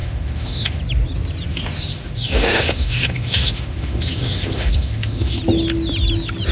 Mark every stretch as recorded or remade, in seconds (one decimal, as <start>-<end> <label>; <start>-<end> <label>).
0.0-0.8 remade; 0.8-1.5 recorded; 1.5-5.4 remade; 5.4-6.5 recorded